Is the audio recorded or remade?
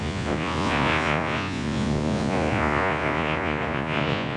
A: remade